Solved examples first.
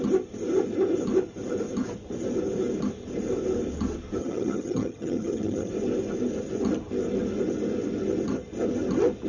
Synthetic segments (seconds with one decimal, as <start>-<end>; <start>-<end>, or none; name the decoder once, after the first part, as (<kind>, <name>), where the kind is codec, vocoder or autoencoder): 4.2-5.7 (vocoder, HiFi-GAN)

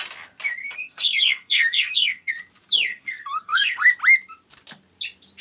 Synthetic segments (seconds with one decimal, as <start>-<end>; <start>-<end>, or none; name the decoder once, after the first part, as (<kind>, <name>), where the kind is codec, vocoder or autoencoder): 0.6-2.3 (codec, SNAC); 2.9-3.9

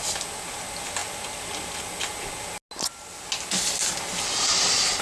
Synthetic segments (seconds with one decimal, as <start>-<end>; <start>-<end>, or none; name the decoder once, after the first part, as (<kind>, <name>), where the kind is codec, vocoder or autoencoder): none